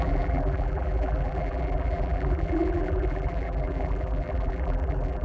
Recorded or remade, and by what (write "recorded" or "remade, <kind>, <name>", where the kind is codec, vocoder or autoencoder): remade, vocoder, BigVGAN v2